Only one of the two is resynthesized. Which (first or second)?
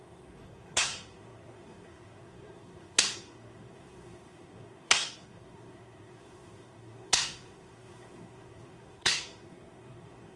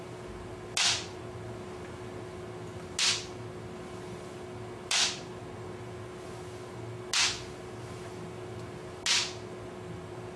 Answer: first